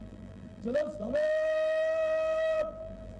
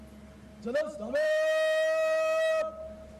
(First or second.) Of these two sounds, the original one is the second